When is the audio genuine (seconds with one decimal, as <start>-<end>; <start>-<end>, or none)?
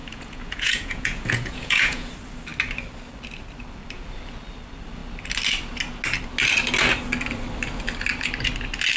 2.1-9.0